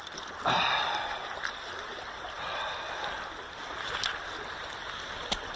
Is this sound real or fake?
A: real